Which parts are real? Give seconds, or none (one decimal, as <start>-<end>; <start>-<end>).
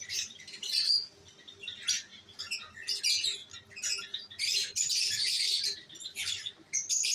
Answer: 0.0-7.1